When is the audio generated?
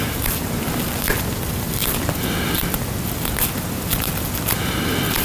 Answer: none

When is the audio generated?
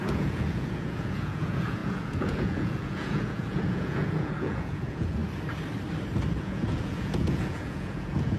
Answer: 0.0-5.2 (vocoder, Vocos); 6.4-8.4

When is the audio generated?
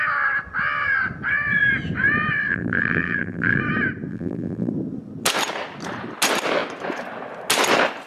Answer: 2.5-3.6 (vocoder, BigVGAN v2); 4.1-4.7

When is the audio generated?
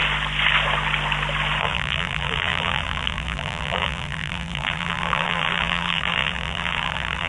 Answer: 1.6-7.3 (vocoder, BigVGAN v2)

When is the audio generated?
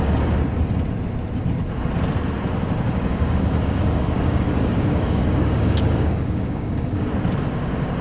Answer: 3.1-7.1 (codec, DAC)